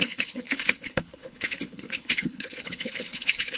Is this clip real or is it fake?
fake